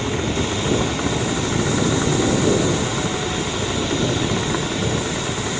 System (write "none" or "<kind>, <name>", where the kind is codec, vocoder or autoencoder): none